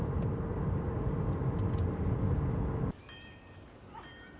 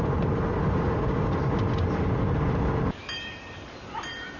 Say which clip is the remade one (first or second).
second